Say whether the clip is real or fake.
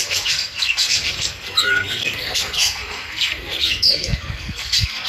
fake